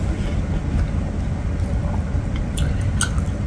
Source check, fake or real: real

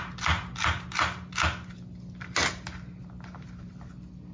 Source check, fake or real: real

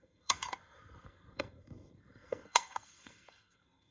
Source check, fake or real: fake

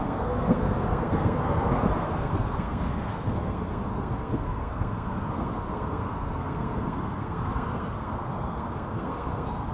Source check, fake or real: fake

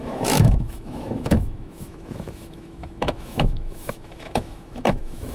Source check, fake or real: fake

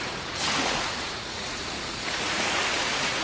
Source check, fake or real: fake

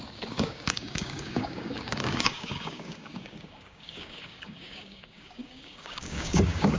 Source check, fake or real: fake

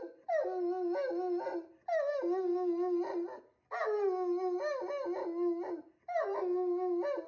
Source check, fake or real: real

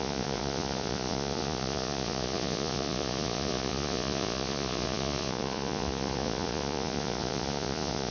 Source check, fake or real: fake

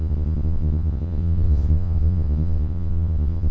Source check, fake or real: fake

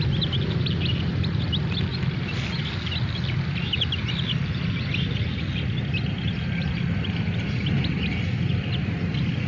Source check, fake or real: real